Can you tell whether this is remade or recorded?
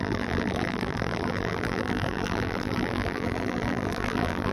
remade